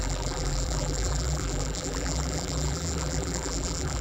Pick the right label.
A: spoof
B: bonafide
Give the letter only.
A